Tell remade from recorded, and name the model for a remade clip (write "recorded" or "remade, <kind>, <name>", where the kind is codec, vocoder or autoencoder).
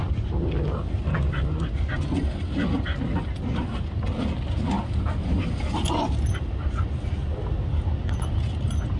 recorded